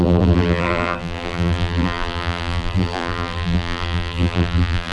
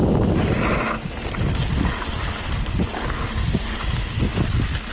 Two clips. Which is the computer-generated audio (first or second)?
first